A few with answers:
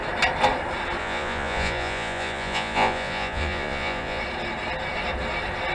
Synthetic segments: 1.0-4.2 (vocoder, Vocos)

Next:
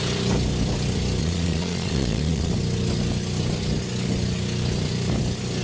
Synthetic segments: 1.2-2.5 (vocoder, Vocos)

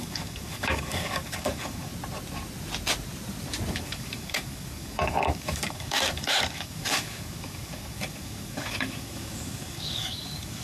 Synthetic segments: 0.0-1.9 (codec, DAC); 3.7-10.6

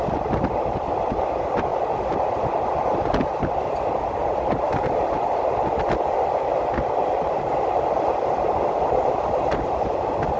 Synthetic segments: none

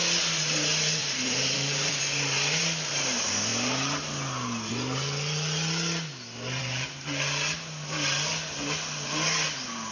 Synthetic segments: 1.0-2.0 (vocoder, BigVGAN v2)

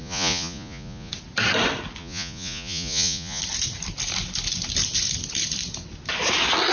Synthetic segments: 0.0-1.1 (vocoder, Vocos); 2.0-3.4

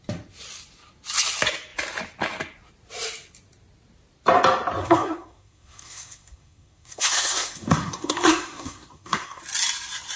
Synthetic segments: 4.8-9.4 (codec, SNAC)

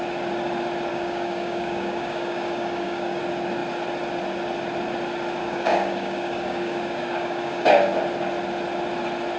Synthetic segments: 0.9-3.2 (codec, DAC); 5.4-7.9